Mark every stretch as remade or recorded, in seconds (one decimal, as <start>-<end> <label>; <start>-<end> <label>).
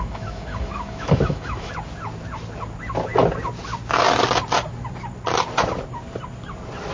0.0-1.7 remade; 1.7-6.9 recorded